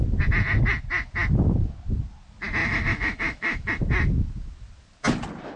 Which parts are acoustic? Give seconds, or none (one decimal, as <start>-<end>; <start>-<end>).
0.0-2.6; 3.7-5.6

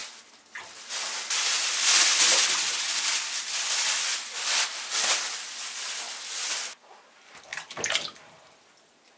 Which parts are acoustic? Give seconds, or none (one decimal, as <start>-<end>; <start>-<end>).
0.0-9.2

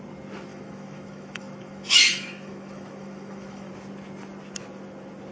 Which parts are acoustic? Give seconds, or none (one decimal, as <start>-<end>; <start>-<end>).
0.0-0.5; 3.7-5.3

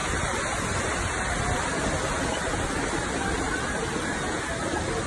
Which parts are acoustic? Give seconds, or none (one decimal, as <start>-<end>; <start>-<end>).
0.0-5.1